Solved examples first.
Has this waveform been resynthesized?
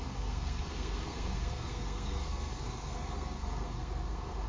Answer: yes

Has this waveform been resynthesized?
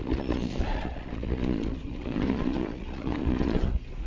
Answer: yes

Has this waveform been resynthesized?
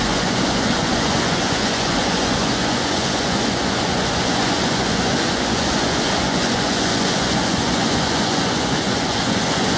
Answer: yes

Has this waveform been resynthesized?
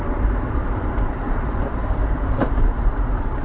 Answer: yes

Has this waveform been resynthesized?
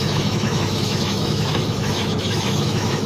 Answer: yes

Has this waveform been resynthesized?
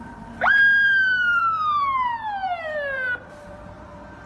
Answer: yes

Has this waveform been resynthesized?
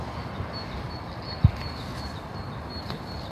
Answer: no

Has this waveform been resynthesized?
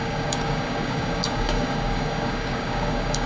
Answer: yes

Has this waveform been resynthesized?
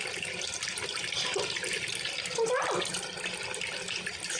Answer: no